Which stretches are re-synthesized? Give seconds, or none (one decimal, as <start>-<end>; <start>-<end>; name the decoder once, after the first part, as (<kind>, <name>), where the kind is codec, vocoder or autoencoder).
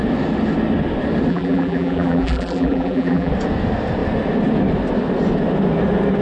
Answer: 1.3-3.3 (vocoder, BigVGAN v2)